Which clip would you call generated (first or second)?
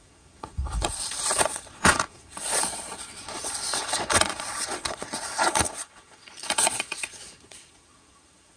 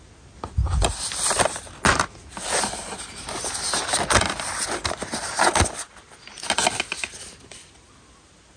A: first